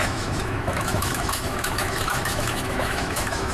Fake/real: fake